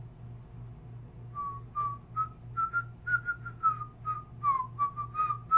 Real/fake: real